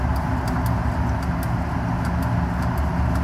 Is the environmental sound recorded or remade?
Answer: recorded